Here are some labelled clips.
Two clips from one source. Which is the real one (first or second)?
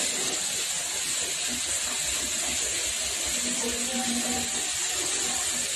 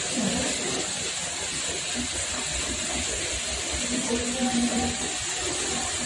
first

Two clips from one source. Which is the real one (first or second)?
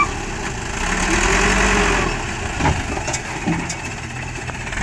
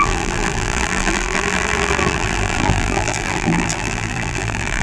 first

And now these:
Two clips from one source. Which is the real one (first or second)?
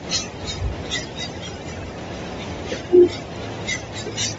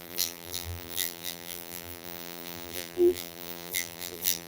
first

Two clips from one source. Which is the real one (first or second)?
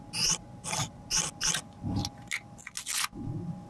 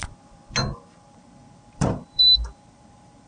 first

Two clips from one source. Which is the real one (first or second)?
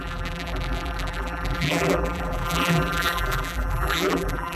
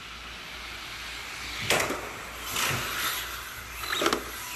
second